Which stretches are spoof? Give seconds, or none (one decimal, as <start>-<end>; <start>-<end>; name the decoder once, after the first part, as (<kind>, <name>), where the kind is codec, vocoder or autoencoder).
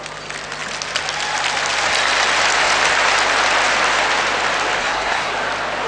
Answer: 4.8-5.3 (codec, SNAC)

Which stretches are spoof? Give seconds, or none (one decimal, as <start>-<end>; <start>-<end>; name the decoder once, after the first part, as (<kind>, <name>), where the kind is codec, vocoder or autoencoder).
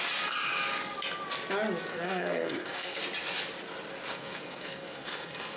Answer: 1.9-3.0 (codec, SNAC); 4.1-5.6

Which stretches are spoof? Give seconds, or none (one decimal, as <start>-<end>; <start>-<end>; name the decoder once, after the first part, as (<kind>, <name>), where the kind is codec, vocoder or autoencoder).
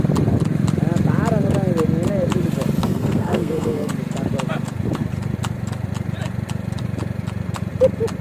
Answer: 2.8-3.9 (codec, SNAC)